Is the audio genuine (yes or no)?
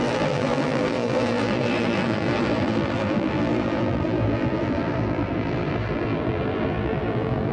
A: no